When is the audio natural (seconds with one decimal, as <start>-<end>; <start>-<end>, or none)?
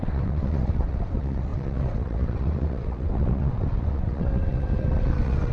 none